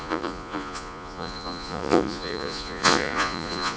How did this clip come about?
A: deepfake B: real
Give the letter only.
A